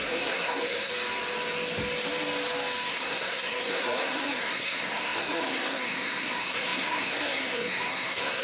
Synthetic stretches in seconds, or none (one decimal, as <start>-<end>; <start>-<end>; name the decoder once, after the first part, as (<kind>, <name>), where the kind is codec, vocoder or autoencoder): 0.0-0.9 (codec, SNAC); 2.9-8.4